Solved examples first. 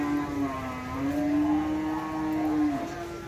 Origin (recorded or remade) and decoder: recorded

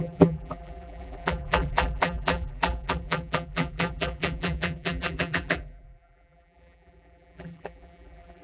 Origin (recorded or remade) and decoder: remade, vocoder, BigVGAN v2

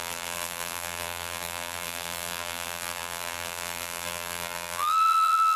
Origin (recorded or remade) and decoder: remade, vocoder, BigVGAN v2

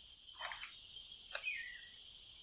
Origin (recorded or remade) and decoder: recorded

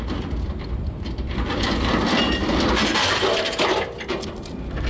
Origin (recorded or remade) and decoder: remade, vocoder, BigVGAN v2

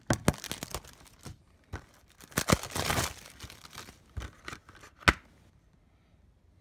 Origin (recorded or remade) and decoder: recorded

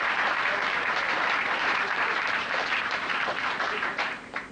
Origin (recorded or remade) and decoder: remade, vocoder, BigVGAN v2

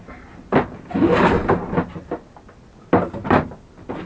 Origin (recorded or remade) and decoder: recorded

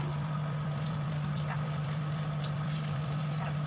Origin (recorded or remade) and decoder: remade, vocoder, BigVGAN v2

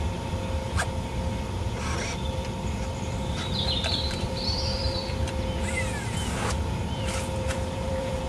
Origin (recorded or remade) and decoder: remade, vocoder, BigVGAN v2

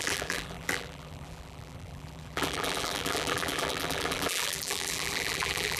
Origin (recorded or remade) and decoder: remade, vocoder, BigVGAN v2